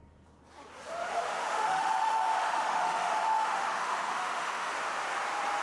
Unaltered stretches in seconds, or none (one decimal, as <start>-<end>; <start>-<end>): 0.0-1.3; 4.7-5.6